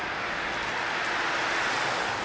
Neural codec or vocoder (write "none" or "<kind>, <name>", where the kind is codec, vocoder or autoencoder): none